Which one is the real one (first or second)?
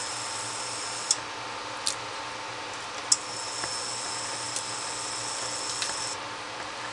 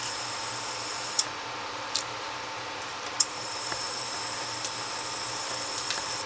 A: first